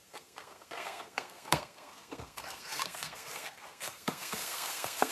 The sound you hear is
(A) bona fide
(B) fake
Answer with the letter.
B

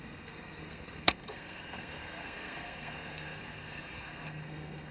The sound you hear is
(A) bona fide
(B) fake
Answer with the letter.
B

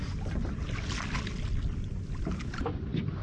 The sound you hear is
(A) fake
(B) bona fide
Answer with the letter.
B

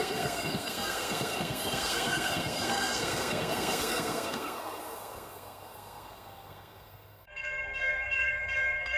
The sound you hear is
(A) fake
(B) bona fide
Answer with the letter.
A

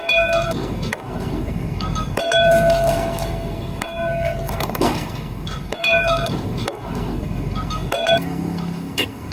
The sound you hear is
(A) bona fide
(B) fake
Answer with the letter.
B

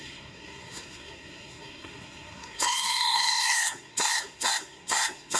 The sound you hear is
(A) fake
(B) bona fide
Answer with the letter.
A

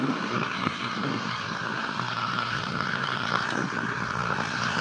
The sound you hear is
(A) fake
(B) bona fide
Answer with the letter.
A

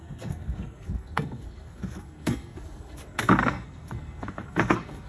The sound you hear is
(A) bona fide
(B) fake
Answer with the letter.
B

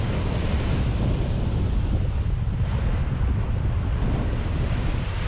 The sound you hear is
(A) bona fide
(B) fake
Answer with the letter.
A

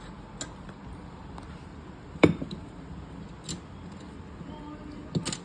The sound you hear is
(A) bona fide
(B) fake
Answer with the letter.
A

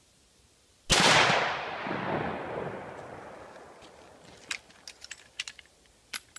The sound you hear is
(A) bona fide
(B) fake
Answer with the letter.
A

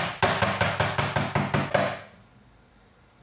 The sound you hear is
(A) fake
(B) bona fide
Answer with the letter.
B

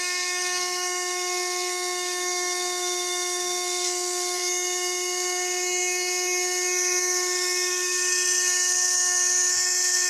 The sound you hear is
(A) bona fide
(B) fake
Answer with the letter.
B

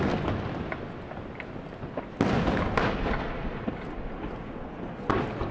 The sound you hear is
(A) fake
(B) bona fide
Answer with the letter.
B